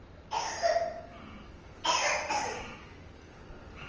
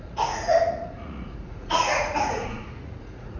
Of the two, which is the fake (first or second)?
second